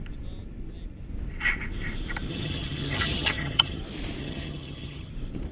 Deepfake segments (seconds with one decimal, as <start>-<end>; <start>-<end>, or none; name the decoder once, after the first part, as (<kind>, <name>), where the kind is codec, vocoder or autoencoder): 2.3-3.8 (vocoder, HiFi-GAN); 4.2-5.1